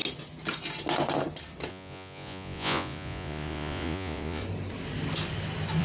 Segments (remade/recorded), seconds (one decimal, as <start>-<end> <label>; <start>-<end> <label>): 0.0-1.7 recorded; 1.7-4.4 remade; 4.4-5.8 recorded